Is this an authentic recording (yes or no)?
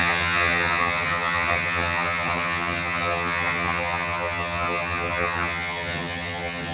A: no